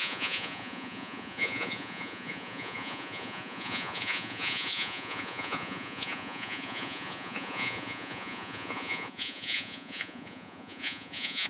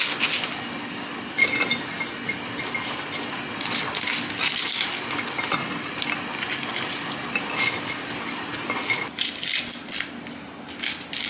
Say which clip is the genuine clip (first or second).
second